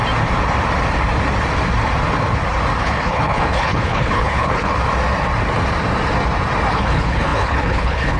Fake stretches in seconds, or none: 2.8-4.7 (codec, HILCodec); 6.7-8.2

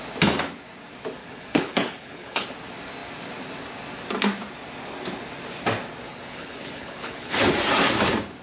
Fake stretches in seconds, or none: 1.2-2.5 (codec, HILCodec); 6.1-7.5

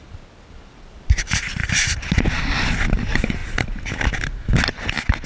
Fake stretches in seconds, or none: none

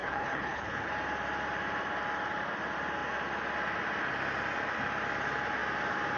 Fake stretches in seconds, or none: 0.0-0.9 (codec, HILCodec)